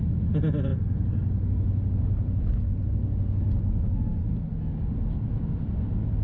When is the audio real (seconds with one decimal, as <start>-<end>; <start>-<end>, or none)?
0.0-6.2